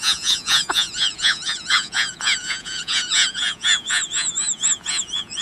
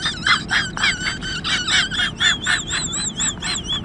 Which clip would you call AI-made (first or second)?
first